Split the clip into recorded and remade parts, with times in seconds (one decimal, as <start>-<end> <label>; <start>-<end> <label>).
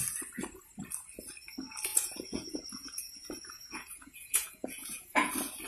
0.0-1.9 recorded; 1.9-5.3 remade; 5.3-5.7 recorded